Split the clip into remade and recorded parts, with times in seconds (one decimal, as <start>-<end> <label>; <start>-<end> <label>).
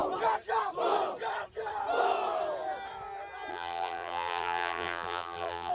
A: 0.0-3.5 recorded; 3.5-5.7 remade